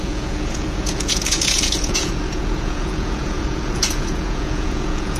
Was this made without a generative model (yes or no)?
no